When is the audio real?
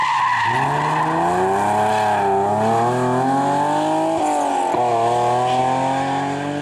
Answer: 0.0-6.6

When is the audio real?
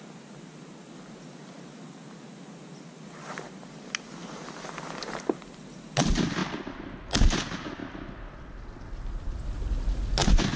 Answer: 0.0-10.6